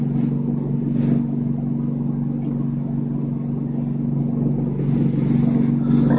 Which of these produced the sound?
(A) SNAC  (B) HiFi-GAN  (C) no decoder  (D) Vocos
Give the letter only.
C